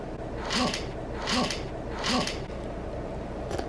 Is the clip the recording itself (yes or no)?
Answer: yes